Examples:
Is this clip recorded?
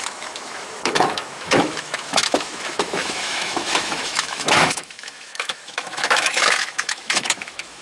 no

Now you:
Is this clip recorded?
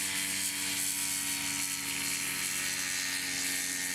yes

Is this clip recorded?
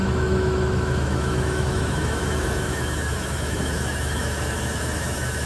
no